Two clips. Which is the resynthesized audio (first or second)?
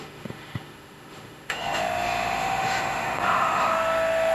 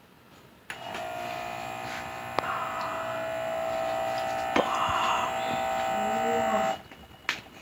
first